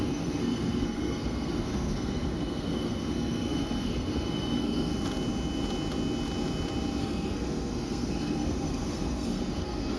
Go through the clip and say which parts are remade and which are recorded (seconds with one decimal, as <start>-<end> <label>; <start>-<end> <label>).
0.0-4.9 remade; 4.9-7.0 recorded; 7.0-10.0 remade